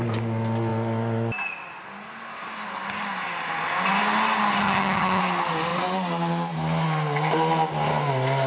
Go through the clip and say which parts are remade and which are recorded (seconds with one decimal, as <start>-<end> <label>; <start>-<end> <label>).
0.0-4.6 recorded; 4.6-5.2 remade; 5.2-8.5 recorded